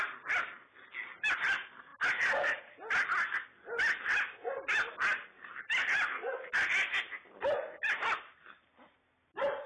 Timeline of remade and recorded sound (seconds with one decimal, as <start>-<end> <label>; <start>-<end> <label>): 0.0-9.7 recorded